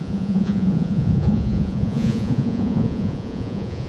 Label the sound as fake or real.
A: fake